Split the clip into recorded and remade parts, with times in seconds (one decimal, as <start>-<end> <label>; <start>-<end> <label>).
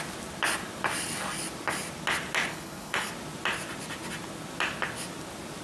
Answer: 0.0-2.5 recorded; 2.5-3.1 remade; 3.1-5.6 recorded